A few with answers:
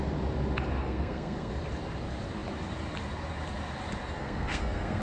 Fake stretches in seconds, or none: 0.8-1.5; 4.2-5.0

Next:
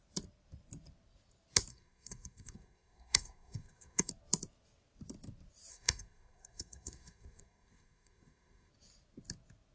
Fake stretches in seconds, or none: 1.7-4.1; 5.7-8.7

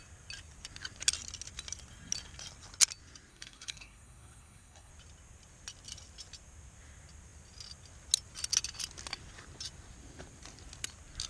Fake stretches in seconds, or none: 3.3-4.9

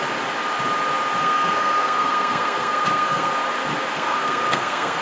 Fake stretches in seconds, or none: 1.2-3.3; 3.9-5.0

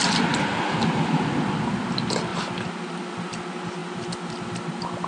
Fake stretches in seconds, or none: none

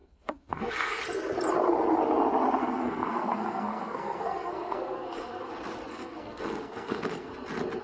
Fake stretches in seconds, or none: 0.0-1.0; 2.6-5.5; 5.9-7.3